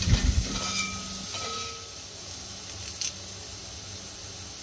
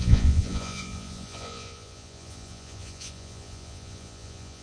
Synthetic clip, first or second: second